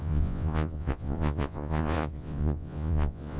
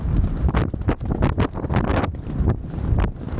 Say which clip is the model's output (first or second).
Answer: first